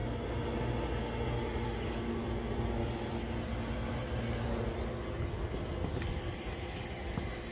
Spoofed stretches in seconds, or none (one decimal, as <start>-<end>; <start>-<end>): none